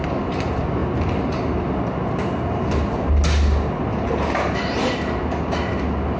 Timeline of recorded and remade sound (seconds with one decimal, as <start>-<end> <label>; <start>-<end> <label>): 0.0-6.2 recorded